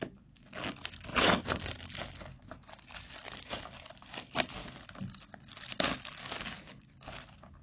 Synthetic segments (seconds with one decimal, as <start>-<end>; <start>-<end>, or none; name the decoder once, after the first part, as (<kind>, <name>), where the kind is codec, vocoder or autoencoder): 1.1-1.6 (vocoder, WaveNeXt)